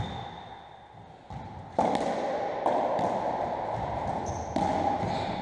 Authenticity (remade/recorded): recorded